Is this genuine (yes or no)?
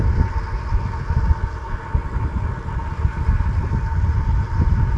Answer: yes